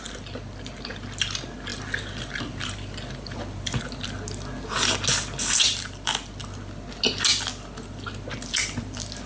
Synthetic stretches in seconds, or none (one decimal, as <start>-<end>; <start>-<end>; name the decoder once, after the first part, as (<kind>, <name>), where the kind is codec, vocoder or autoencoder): 1.7-3.8 (vocoder, BigVGAN v2)